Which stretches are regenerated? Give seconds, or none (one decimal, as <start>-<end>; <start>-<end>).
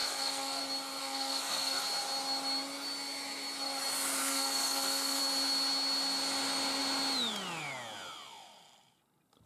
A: 0.0-0.6; 1.0-1.8; 4.2-5.2